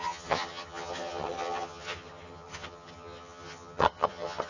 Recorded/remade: remade